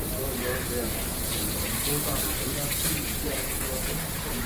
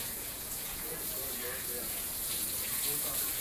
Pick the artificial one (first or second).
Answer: second